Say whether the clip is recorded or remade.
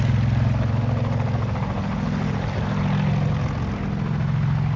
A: recorded